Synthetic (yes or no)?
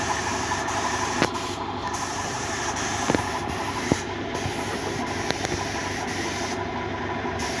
no